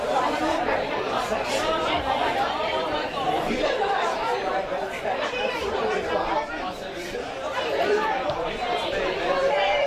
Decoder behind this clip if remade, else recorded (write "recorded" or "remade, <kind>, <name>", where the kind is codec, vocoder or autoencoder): remade, vocoder, BigVGAN v2